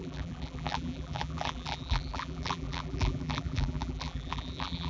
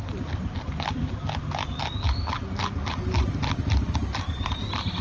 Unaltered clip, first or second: second